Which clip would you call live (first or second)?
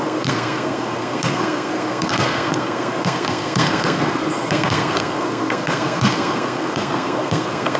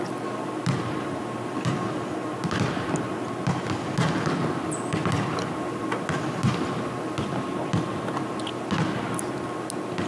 second